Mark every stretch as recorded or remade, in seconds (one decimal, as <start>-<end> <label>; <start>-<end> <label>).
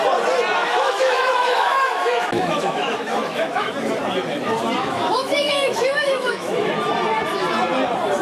0.0-0.6 recorded; 0.6-3.7 remade; 3.7-4.8 recorded; 4.8-6.7 remade; 6.7-8.2 recorded